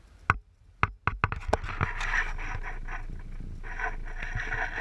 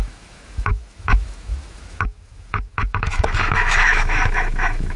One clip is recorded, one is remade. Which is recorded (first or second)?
first